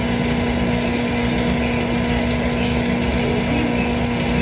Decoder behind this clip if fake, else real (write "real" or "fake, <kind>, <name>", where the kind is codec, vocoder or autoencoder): real